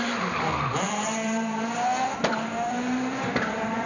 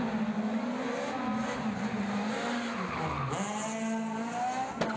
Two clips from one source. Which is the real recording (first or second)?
second